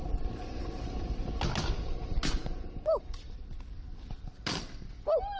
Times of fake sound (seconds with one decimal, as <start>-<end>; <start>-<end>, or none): none